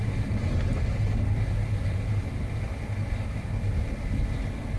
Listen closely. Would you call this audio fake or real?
real